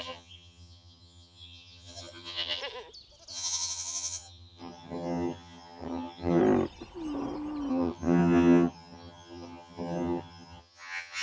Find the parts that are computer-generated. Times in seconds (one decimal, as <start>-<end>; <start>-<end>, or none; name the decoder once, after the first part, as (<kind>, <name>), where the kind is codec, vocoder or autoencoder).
0.0-2.6 (vocoder, HiFi-GAN); 3.3-6.4; 7.7-11.2